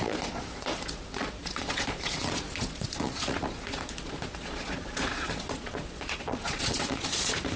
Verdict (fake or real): fake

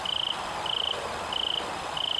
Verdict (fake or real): real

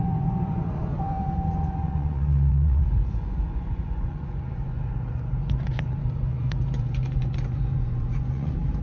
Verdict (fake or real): fake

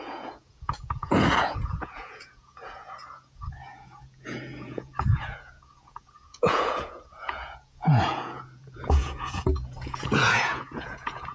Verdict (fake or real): fake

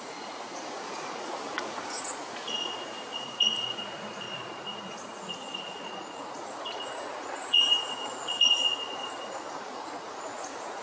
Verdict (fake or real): fake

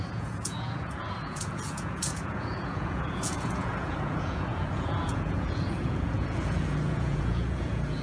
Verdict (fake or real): fake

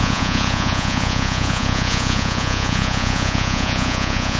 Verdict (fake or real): fake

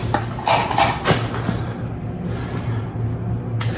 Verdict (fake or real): real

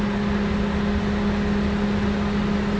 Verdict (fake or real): real